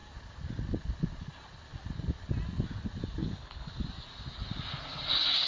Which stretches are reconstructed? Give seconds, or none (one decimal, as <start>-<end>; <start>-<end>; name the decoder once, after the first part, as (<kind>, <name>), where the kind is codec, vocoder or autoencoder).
3.2-3.7 (codec, HILCodec)